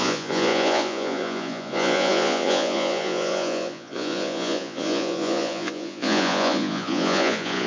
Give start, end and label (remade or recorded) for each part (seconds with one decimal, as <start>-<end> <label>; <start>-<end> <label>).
0.0-7.7 remade

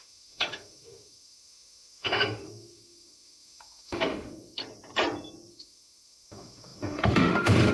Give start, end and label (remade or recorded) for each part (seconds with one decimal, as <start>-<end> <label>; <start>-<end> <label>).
0.0-4.6 remade; 4.6-5.5 recorded; 5.5-7.7 remade

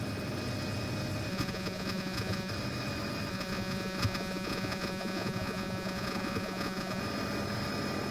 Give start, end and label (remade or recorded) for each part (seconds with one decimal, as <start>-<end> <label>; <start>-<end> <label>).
0.0-1.3 recorded; 1.3-2.5 remade; 2.5-3.3 recorded; 3.3-7.0 remade; 7.0-8.1 recorded

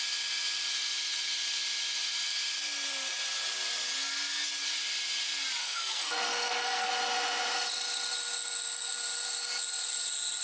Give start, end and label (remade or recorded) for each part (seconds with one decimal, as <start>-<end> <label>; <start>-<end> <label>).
0.0-5.6 recorded; 5.6-6.9 remade; 6.9-10.4 recorded